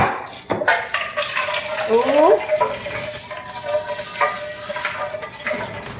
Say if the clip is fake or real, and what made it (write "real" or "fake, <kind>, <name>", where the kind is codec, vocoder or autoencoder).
real